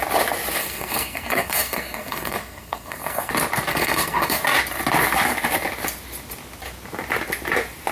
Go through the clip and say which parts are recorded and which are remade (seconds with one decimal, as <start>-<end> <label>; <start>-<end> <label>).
0.0-0.6 recorded; 0.6-3.3 remade; 3.3-3.7 recorded; 3.7-4.4 remade; 4.4-7.9 recorded